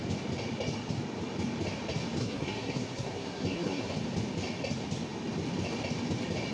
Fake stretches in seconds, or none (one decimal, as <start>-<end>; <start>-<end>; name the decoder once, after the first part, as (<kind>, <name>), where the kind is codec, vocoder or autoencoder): 2.2-3.9 (codec, SNAC)